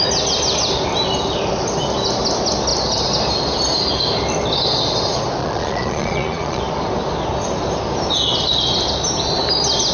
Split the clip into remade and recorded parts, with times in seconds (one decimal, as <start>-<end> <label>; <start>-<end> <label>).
0.0-5.4 recorded; 5.4-6.6 remade; 6.6-9.9 recorded